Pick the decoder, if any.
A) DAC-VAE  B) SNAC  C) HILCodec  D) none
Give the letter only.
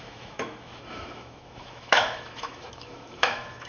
A